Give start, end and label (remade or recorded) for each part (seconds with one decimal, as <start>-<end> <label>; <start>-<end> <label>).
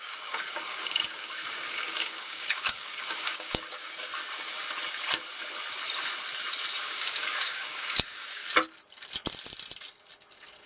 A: 0.0-4.1 remade; 4.1-6.8 recorded; 6.8-8.4 remade; 8.4-10.7 recorded